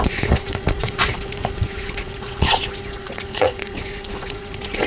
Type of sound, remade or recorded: remade